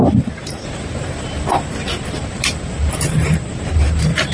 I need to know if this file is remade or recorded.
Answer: remade